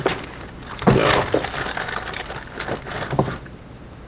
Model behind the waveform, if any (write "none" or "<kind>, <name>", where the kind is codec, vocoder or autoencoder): none